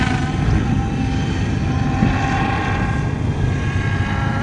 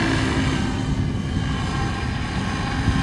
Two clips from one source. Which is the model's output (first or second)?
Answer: first